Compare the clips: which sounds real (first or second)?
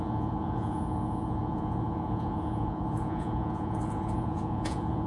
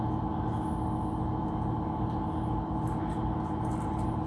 second